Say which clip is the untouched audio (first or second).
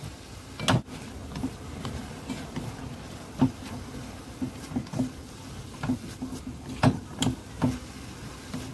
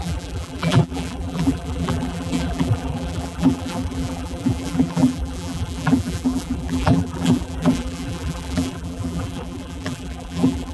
first